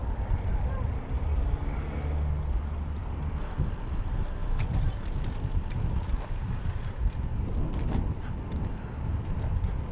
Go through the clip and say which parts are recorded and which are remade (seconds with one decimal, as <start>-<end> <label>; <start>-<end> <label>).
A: 0.0-3.0 recorded; 3.0-4.0 remade; 4.0-4.4 recorded; 4.4-5.3 remade; 5.3-9.9 recorded